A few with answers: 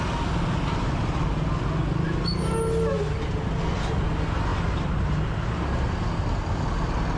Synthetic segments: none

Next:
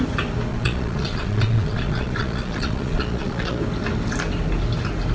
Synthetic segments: 0.5-3.6 (vocoder, Vocos)